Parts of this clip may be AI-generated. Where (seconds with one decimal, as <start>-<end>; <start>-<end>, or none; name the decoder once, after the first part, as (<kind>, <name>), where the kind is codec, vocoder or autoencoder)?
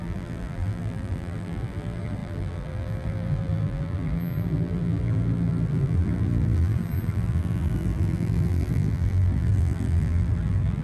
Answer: 0.0-10.8 (vocoder, BigVGAN v2)